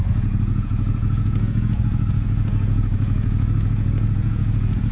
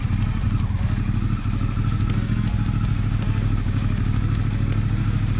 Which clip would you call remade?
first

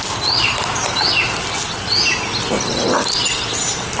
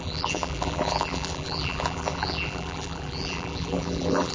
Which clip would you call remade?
second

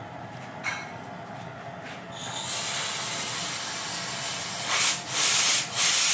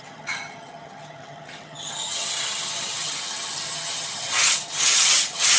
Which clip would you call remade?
second